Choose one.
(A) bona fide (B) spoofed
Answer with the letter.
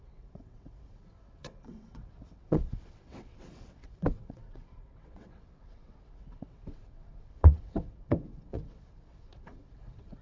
B